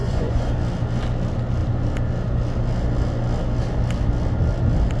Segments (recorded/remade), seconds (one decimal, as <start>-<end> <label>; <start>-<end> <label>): 0.0-0.5 remade; 0.5-5.0 recorded

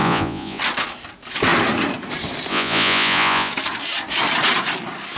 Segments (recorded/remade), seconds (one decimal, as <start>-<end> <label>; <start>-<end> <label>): 0.0-0.6 remade; 0.6-2.5 recorded; 2.5-3.5 remade; 3.5-5.2 recorded

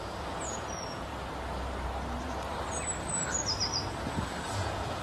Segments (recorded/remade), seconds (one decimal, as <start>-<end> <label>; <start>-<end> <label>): 0.0-1.1 remade; 1.1-4.1 recorded; 4.1-5.0 remade

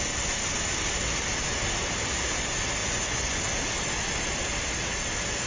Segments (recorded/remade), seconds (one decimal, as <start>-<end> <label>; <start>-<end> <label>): 0.0-2.8 recorded; 2.8-3.4 remade; 3.4-5.5 recorded

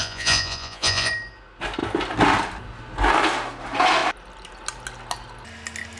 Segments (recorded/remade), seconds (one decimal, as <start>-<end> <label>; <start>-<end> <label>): 0.0-1.1 remade; 1.1-6.0 recorded

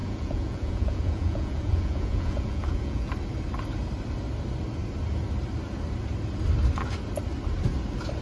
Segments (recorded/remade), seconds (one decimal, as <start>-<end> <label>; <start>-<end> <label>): 0.0-3.1 remade; 3.1-8.2 recorded

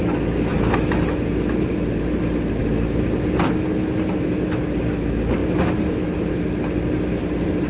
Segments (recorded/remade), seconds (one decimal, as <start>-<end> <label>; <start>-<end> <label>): 0.0-7.7 recorded